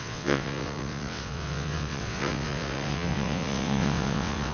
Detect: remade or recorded remade